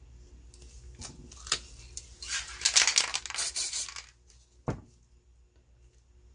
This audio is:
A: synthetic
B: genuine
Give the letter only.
B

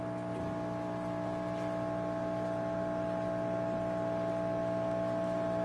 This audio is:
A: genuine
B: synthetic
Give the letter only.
A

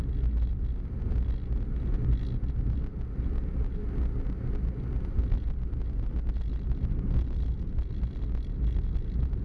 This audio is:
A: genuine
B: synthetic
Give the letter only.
A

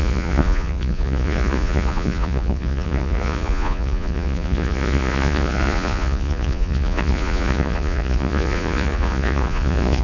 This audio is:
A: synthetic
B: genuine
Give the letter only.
A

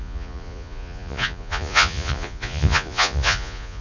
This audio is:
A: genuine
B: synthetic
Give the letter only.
B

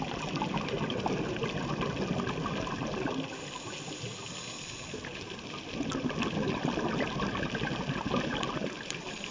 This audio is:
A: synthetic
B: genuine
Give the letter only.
B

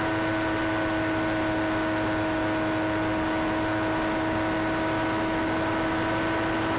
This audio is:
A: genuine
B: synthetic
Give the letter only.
A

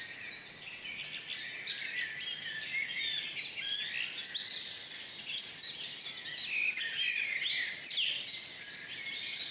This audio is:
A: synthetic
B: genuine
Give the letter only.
B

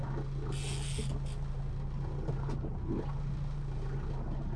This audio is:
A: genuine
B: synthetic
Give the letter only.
A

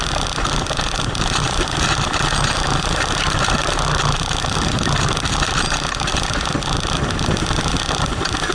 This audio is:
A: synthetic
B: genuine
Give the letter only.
B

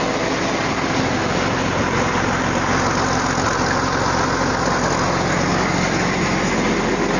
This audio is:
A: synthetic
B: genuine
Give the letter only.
B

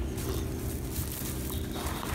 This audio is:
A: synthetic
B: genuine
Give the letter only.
B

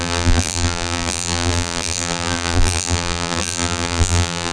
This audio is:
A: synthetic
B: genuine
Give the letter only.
A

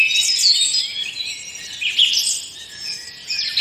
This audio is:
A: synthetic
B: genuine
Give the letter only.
B